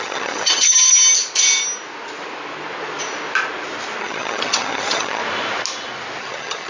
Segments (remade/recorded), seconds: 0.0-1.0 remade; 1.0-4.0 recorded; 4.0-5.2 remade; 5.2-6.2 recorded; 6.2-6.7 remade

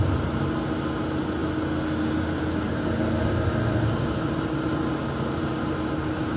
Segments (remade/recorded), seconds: 0.0-6.4 recorded

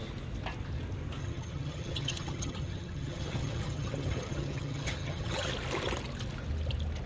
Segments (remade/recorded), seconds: 0.0-1.2 recorded; 1.2-5.5 remade; 5.5-7.1 recorded